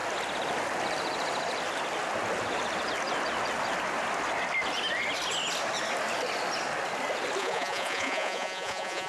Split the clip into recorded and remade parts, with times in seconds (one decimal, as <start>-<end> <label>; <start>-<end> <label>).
0.0-7.4 recorded; 7.4-9.1 remade